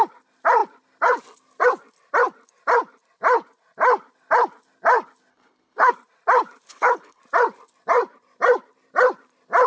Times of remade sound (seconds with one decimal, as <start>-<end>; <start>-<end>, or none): 5.3-5.9; 6.7-7.2